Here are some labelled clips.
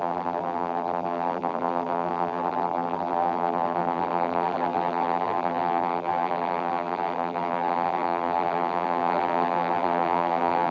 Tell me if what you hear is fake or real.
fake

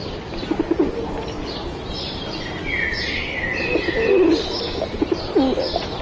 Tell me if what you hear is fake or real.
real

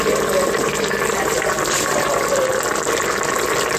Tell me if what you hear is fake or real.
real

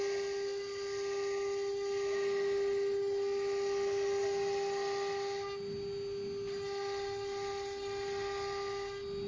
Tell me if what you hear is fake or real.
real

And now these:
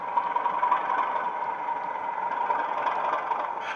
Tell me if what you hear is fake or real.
real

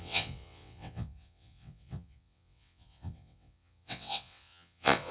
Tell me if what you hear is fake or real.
fake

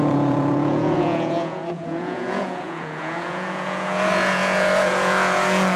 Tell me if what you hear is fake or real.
fake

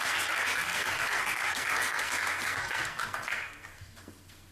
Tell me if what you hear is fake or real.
fake